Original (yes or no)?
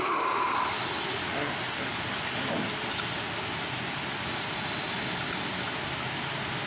yes